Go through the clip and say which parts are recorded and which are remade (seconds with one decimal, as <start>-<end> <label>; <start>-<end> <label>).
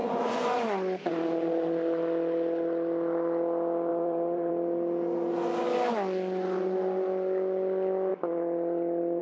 0.0-1.1 remade; 1.1-3.9 recorded; 3.9-4.5 remade; 4.5-9.2 recorded